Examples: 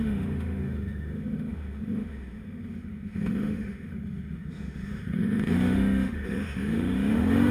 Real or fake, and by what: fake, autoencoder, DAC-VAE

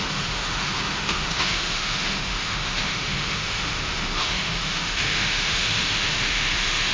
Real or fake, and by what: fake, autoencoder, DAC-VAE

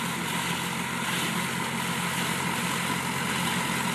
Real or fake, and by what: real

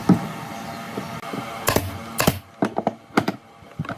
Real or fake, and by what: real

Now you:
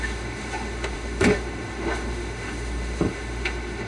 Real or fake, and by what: fake, autoencoder, DAC-VAE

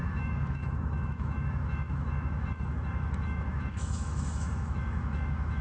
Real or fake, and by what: fake, autoencoder, DAC-VAE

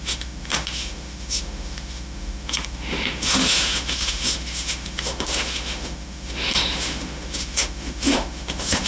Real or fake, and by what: fake, autoencoder, DAC-VAE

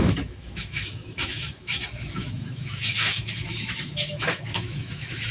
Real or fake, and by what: fake, autoencoder, DAC-VAE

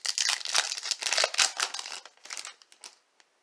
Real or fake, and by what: real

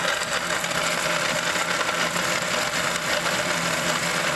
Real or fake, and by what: real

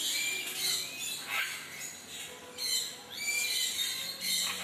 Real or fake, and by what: real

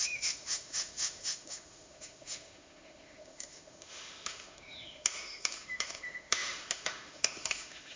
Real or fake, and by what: fake, autoencoder, DAC-VAE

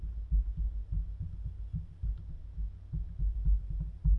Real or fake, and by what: real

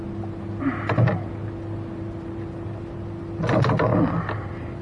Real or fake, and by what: real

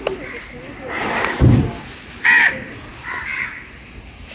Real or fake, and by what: real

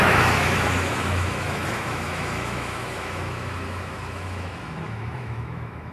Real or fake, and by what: fake, autoencoder, DAC-VAE